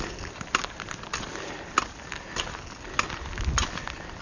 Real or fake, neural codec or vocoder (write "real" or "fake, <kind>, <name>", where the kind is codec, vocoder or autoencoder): real